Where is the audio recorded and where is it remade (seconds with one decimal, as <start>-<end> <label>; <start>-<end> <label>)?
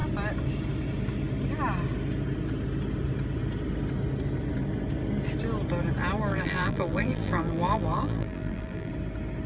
0.0-6.3 recorded; 6.3-8.9 remade; 8.9-9.5 recorded